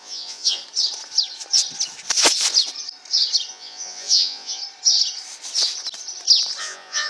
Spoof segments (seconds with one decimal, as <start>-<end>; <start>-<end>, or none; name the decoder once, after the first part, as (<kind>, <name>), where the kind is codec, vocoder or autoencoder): 0.0-0.6 (vocoder, Vocos); 3.5-4.6; 6.6-7.1